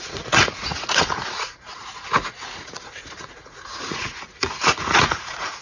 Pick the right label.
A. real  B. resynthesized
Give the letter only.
B